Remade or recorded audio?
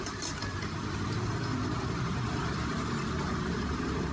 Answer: remade